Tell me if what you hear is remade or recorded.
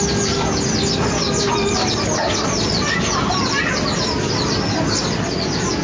recorded